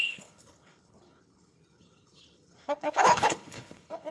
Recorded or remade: remade